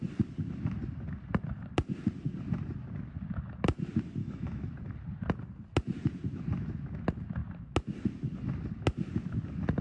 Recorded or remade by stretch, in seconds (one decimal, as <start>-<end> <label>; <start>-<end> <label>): 0.0-4.2 recorded; 4.2-4.7 remade; 4.7-9.8 recorded